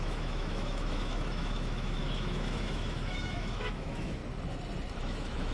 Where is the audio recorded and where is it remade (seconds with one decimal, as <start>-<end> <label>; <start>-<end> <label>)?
0.0-4.2 remade; 4.2-5.0 recorded; 5.0-5.5 remade

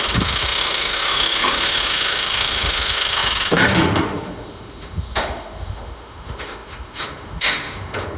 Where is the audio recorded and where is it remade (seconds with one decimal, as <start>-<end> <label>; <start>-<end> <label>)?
0.0-8.2 remade

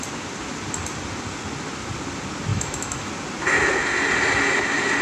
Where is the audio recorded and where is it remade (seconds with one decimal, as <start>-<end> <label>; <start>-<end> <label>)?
0.0-2.5 recorded; 2.5-3.1 remade; 3.1-5.0 recorded